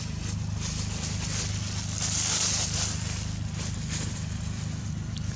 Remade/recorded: recorded